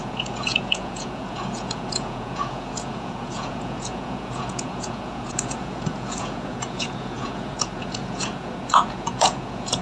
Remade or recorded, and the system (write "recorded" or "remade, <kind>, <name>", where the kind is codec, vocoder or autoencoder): remade, vocoder, Vocos